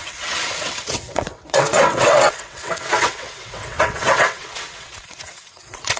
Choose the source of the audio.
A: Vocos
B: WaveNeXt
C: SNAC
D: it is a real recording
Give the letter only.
B